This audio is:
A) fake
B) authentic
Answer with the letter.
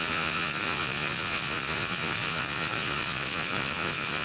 A